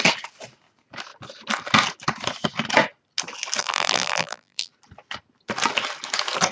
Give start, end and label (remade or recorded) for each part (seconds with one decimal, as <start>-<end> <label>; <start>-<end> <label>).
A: 0.0-3.6 recorded; 3.6-4.7 remade; 4.7-6.5 recorded